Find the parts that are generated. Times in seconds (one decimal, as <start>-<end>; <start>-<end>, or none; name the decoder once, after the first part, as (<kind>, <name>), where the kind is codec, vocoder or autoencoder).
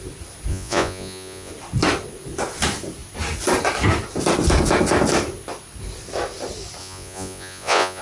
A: 0.5-1.5 (vocoder, Vocos); 6.8-8.0